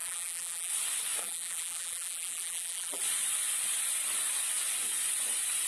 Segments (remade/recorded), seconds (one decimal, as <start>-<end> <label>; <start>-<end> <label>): 0.0-0.7 remade; 0.7-1.2 recorded; 1.2-3.0 remade; 3.0-5.7 recorded